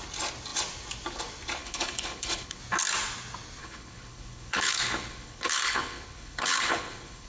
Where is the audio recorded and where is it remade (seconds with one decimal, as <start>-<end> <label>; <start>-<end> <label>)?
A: 0.0-1.6 recorded; 1.6-2.6 remade; 2.6-3.6 recorded; 3.6-7.3 remade